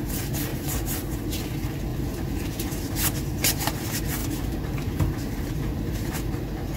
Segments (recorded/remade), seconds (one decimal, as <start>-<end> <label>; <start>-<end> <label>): 0.0-0.5 recorded; 0.5-1.2 remade; 1.2-1.9 recorded; 1.9-3.7 remade; 3.7-4.2 recorded; 4.2-6.2 remade; 6.2-6.8 recorded